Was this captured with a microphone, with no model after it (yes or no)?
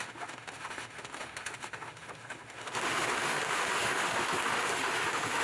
no